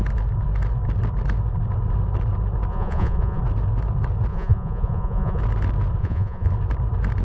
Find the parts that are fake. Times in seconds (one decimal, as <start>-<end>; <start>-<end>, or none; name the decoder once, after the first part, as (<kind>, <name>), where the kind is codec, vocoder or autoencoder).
2.7-3.4 (vocoder, Vocos); 4.3-5.4; 6.0-6.5